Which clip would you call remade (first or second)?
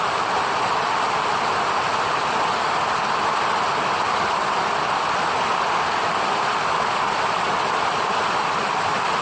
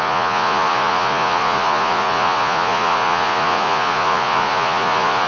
second